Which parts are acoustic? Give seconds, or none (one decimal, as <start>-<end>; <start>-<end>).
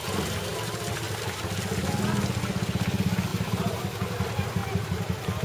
0.0-3.3; 3.8-4.6